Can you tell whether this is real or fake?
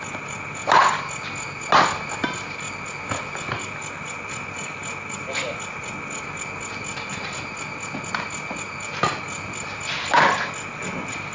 real